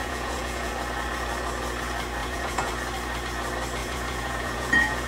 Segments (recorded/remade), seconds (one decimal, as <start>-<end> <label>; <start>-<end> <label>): 0.0-0.7 remade; 0.7-2.2 recorded; 2.2-2.7 remade; 2.7-3.8 recorded; 3.8-5.1 remade